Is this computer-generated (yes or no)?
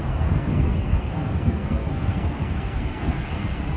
yes